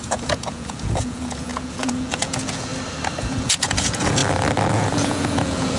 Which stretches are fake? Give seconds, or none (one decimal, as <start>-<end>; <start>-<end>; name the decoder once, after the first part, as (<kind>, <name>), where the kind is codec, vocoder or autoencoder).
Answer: 0.0-2.7 (vocoder, Vocos); 3.2-4.2; 4.7-5.8